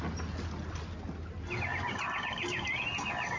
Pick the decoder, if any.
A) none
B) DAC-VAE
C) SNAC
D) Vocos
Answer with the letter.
A